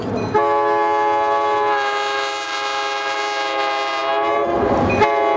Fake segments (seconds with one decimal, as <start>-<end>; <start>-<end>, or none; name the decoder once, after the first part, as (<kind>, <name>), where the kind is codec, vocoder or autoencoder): none